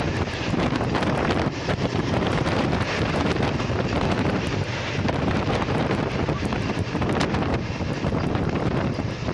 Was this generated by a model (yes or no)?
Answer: yes